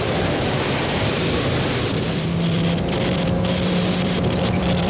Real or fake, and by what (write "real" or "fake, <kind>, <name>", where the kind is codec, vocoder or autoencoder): fake, vocoder, BigVGAN v2